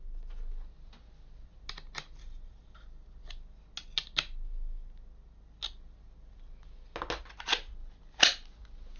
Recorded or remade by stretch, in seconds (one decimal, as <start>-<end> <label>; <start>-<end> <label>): 0.0-9.0 recorded